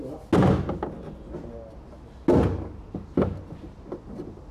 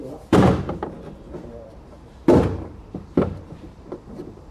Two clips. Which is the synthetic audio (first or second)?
second